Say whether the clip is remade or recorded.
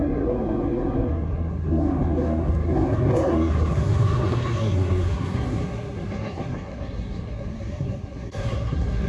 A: remade